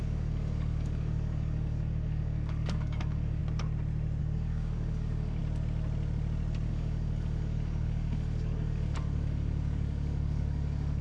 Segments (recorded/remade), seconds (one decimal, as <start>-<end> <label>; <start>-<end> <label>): 0.0-3.4 remade; 3.4-4.2 recorded; 4.2-5.4 remade; 5.4-6.7 recorded; 6.7-11.0 remade